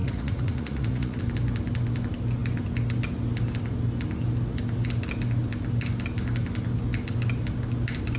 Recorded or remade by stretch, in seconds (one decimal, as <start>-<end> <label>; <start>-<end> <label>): 0.0-1.2 remade; 1.2-8.2 recorded